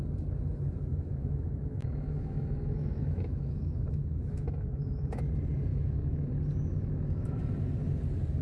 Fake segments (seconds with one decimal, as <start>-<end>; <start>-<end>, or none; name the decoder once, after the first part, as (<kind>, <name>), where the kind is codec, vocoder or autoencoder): 0.9-5.2 (autoencoder, DAC-VAE); 5.7-6.3; 6.7-7.4